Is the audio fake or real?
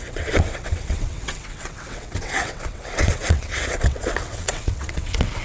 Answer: fake